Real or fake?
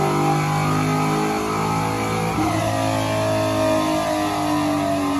real